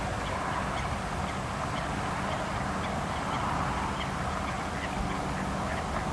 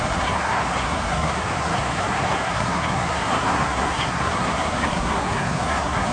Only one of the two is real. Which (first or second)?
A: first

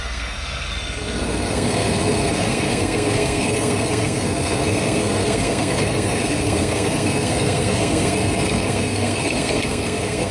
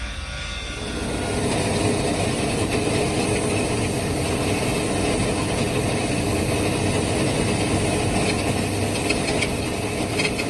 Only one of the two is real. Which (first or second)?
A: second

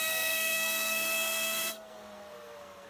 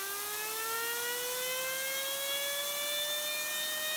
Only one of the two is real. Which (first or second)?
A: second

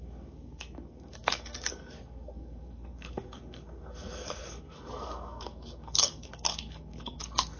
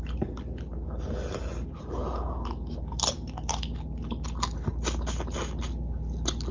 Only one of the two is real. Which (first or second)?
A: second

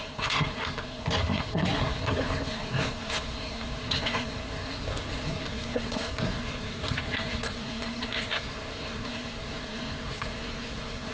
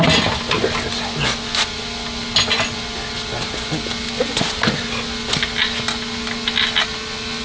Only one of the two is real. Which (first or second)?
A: second